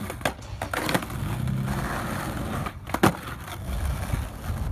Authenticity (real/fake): real